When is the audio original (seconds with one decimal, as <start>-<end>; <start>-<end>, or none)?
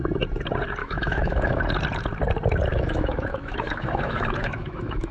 0.0-0.8; 1.6-2.7